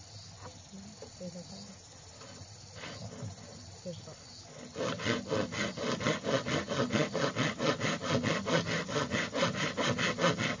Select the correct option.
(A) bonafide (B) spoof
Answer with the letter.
A